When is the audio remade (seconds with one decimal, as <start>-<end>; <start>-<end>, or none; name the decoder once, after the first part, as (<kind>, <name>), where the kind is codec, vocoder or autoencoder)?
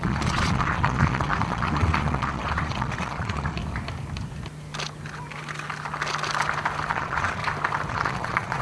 0.0-3.6 (vocoder, Vocos); 6.9-7.4; 7.9-8.6